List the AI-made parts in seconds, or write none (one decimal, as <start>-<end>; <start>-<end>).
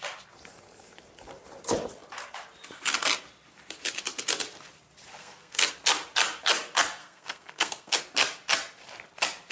5.1-5.7; 7.0-8.0